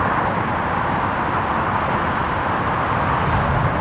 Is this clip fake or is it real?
real